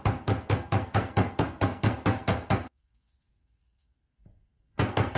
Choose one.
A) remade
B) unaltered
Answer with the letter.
A